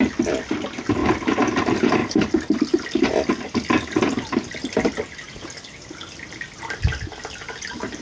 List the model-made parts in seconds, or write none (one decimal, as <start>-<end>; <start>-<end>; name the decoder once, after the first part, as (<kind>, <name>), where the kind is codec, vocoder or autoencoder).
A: none